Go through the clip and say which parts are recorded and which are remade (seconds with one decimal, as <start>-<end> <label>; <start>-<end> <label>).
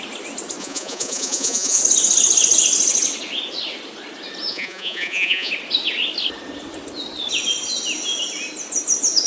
0.0-0.6 recorded; 0.6-1.8 remade; 1.8-4.5 recorded; 4.5-5.5 remade; 5.5-9.3 recorded